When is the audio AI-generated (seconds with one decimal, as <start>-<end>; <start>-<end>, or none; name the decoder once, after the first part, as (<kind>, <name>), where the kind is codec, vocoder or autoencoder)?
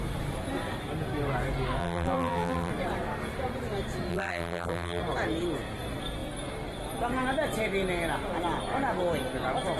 1.8-2.7 (vocoder, BigVGAN v2); 4.1-5.0